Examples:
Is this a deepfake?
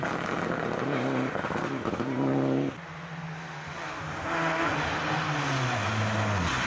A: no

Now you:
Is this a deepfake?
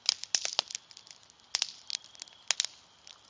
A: no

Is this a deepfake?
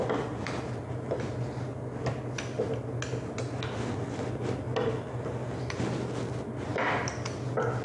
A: no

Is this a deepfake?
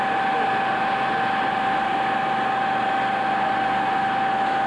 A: no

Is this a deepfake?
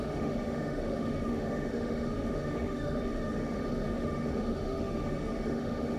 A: yes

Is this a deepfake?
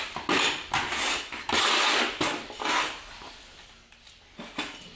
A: no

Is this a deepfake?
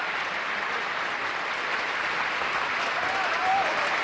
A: no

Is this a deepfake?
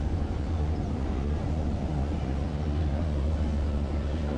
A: yes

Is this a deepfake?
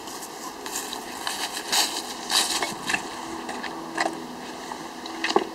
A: no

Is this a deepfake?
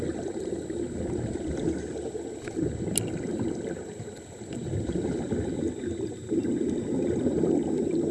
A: no